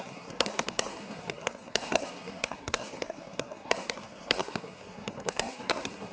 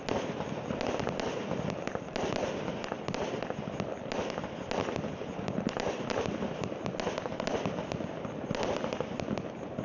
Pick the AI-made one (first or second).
first